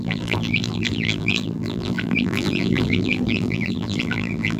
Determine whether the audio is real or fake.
fake